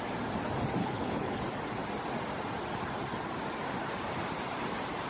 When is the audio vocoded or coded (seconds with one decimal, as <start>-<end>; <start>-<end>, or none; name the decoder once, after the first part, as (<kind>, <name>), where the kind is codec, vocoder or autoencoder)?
0.8-1.4 (codec, HILCodec)